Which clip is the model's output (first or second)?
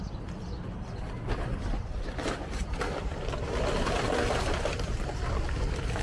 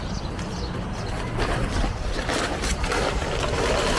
first